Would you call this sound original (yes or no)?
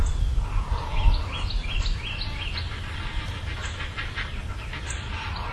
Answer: yes